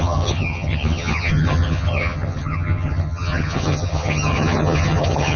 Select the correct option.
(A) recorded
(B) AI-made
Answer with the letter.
B